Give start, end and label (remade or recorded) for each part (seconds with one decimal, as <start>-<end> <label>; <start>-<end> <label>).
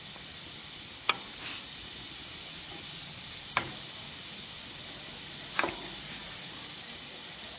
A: 0.0-6.2 recorded; 6.2-7.6 remade